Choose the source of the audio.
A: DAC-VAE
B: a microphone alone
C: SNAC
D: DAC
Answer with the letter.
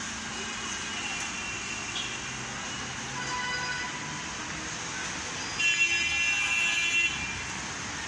B